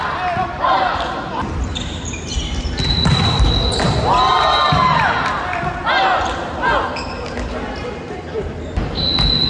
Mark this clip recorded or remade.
recorded